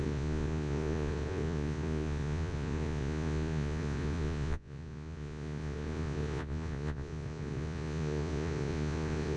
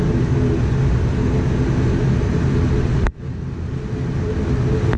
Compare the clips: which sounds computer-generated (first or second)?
first